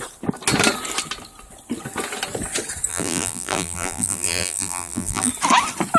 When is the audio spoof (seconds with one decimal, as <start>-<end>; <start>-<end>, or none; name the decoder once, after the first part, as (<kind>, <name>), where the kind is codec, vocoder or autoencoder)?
2.9-5.3 (vocoder, BigVGAN v2)